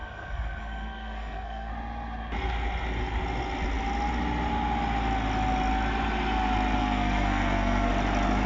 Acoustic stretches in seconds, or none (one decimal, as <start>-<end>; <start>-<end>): 1.7-6.8; 7.9-8.5